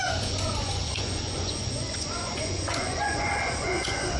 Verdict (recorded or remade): remade